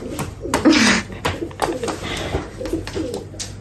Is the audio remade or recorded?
recorded